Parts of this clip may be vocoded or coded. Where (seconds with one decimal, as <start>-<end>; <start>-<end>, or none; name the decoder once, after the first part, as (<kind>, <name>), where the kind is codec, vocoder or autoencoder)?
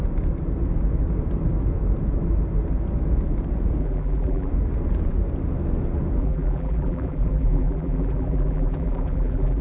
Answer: 3.8-4.5 (vocoder, BigVGAN v2); 6.2-9.6